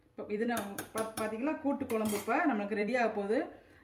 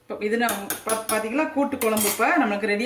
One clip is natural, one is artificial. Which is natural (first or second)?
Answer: second